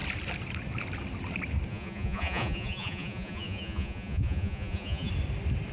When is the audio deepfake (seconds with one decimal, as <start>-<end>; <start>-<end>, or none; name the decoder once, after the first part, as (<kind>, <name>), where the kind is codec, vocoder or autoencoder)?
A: 1.7-5.1 (vocoder, Vocos)